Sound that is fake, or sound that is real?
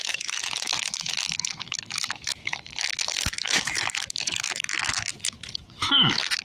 fake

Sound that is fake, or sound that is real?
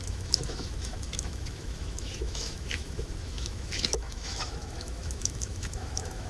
fake